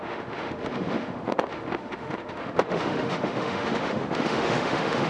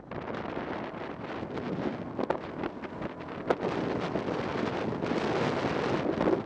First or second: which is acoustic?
second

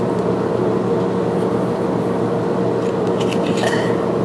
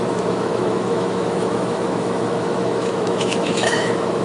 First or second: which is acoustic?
first